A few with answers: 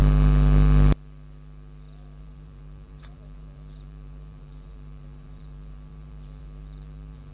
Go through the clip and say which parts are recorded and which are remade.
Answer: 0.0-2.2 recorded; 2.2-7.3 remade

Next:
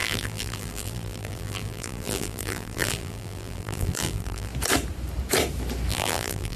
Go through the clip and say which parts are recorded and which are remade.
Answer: 0.0-4.5 remade; 4.5-5.9 recorded; 5.9-6.6 remade

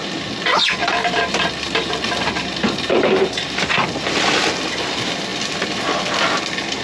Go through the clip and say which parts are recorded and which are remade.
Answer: 0.0-0.8 recorded; 0.8-3.7 remade; 3.7-6.8 recorded

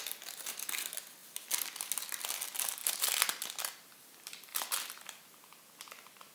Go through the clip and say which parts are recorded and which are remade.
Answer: 0.0-4.5 recorded; 4.5-5.6 remade; 5.6-6.3 recorded

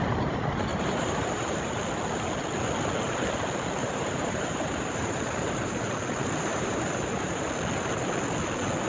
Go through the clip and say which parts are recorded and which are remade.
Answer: 0.0-0.7 recorded; 0.7-1.7 remade; 1.7-3.8 recorded; 3.8-5.8 remade; 5.8-6.5 recorded; 6.5-7.5 remade; 7.5-8.9 recorded

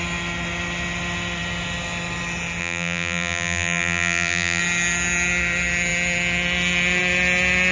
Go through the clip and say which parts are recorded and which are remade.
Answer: 0.0-2.6 recorded; 2.6-4.6 remade; 4.6-7.7 recorded

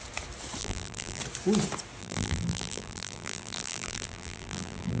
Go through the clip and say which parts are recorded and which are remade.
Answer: 0.0-0.6 recorded; 0.6-1.2 remade; 1.2-2.0 recorded; 2.0-5.0 remade

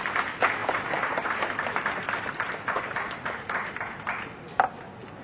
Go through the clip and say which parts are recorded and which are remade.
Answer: 0.0-0.6 recorded; 0.6-3.7 remade; 3.7-5.2 recorded